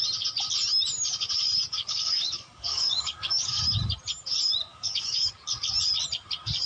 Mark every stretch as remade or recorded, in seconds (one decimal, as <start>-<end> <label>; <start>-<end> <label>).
0.0-1.7 recorded; 1.7-3.6 remade; 3.6-4.7 recorded; 4.7-5.3 remade; 5.3-6.7 recorded

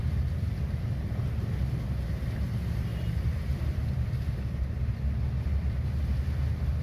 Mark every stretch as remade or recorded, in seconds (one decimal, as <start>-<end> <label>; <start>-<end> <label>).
0.0-6.8 recorded